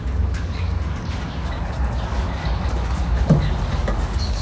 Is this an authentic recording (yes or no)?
no